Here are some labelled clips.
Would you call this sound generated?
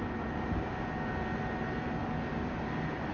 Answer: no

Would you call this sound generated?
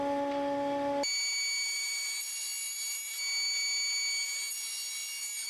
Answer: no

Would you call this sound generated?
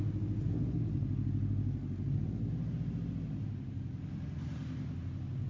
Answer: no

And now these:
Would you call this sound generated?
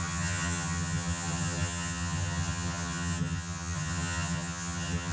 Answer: yes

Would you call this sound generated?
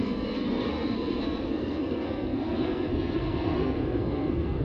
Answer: yes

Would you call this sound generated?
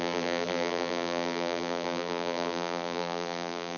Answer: yes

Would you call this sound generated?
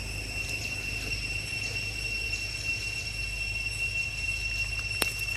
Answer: no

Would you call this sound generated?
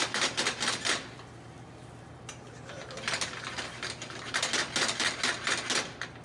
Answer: no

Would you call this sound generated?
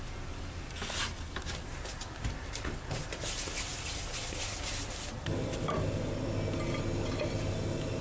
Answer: no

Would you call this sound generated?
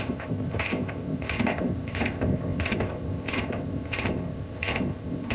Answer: yes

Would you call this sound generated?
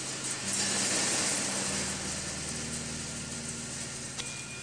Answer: no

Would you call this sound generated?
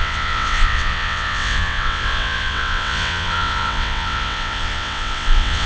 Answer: yes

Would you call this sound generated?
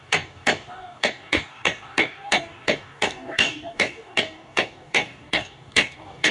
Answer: yes